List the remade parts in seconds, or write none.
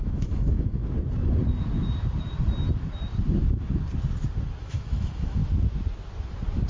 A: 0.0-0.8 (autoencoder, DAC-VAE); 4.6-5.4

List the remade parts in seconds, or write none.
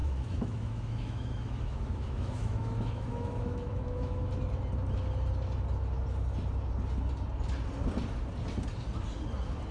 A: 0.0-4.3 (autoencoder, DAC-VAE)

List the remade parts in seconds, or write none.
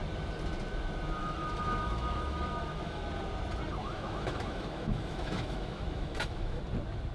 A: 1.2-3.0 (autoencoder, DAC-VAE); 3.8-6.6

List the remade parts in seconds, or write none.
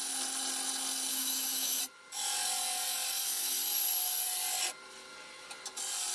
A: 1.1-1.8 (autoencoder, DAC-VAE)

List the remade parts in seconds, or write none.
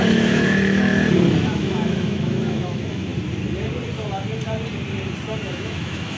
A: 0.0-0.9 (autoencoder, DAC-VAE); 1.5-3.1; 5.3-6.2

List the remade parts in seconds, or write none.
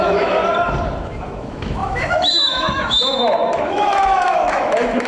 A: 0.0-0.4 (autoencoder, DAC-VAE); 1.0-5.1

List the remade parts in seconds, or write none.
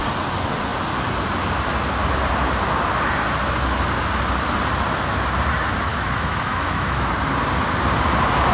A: 5.9-7.1 (autoencoder, DAC-VAE)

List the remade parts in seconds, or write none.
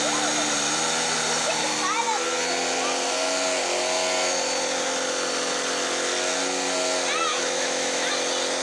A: 7.3-8.1 (autoencoder, DAC-VAE)